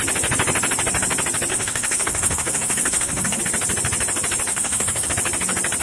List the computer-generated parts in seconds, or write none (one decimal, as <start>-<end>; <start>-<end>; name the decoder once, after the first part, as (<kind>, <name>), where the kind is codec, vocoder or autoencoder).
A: 1.5-3.4 (codec, SNAC); 4.5-5.1